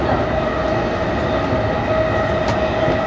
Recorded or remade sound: recorded